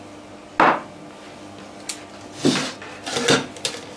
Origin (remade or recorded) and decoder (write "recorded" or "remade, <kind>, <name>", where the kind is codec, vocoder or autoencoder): recorded